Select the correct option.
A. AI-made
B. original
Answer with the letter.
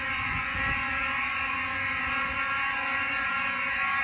A